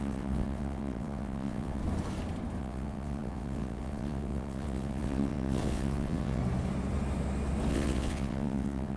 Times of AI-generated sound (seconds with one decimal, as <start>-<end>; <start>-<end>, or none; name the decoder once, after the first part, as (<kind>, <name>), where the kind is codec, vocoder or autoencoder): 0.0-1.8 (vocoder, WaveNeXt); 2.6-6.4; 7.7-9.0